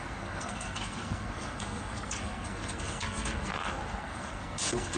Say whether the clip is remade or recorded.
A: remade